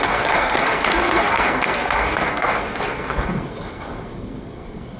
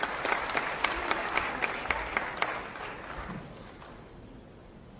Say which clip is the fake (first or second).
first